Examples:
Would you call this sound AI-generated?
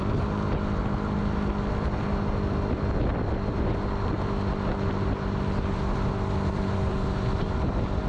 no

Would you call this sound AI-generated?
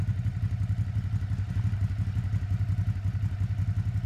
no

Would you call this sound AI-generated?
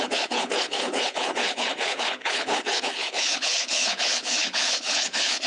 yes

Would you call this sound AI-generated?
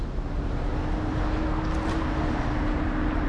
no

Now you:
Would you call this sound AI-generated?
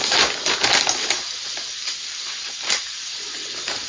no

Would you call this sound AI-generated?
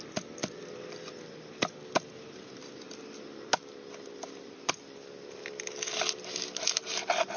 no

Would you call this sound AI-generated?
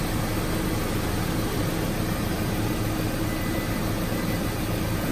no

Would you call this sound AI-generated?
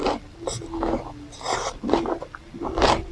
no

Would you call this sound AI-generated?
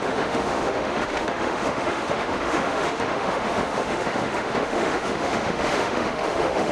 yes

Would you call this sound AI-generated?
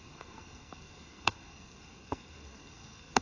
yes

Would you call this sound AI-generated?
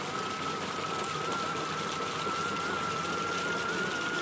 no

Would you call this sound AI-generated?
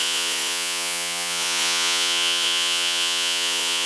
yes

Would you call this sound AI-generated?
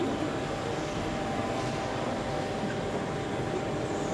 no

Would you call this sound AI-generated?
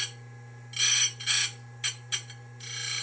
no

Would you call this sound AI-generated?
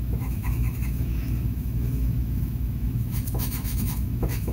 yes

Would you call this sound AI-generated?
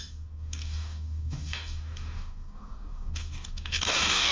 yes